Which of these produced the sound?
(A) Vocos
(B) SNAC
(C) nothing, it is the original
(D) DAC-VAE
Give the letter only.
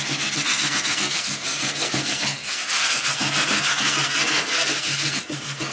B